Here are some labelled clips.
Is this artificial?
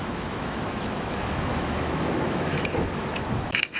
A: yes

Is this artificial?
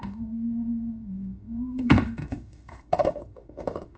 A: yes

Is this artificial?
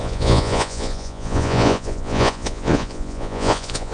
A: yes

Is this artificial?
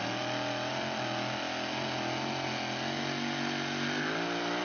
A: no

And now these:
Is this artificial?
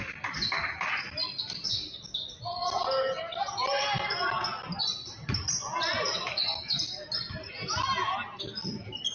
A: no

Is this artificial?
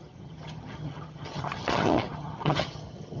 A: yes